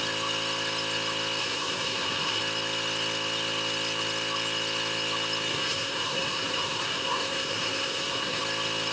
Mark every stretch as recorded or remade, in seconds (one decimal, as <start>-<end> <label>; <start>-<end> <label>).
0.0-1.4 recorded; 1.4-2.4 remade; 2.4-5.5 recorded; 5.5-8.4 remade; 8.4-8.9 recorded